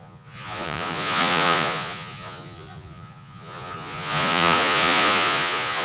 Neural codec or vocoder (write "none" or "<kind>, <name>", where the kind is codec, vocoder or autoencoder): vocoder, Vocos